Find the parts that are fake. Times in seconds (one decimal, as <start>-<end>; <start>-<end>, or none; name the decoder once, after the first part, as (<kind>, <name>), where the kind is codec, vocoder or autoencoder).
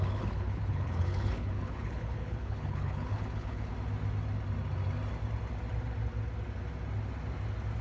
0.0-3.7 (codec, HILCodec)